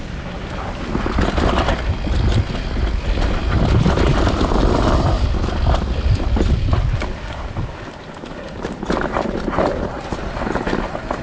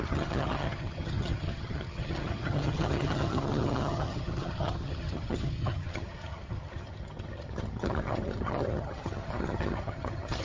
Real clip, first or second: first